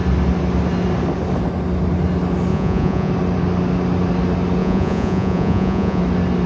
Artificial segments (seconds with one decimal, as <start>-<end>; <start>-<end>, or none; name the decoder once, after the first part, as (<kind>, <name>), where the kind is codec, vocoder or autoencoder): 2.5-3.1 (vocoder, Vocos); 4.6-6.0